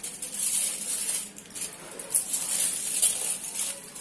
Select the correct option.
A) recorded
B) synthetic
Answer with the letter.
A